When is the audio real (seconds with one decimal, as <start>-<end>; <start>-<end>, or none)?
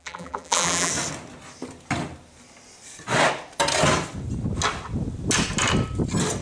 0.9-6.4